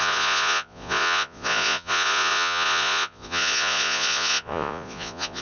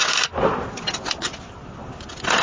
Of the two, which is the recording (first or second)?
second